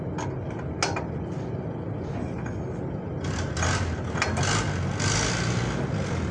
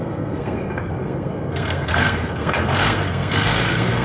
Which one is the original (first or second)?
first